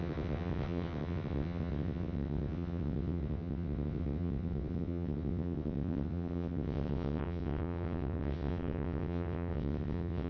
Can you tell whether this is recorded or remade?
remade